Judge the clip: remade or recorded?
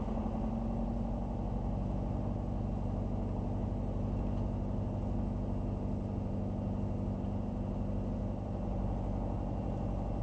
recorded